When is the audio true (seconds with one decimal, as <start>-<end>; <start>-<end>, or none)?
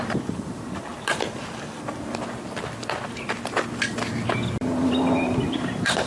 0.9-4.6